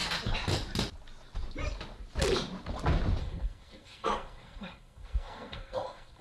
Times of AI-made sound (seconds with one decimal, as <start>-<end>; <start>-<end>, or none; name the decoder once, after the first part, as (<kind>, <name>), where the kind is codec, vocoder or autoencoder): 3.2-6.2 (codec, SNAC)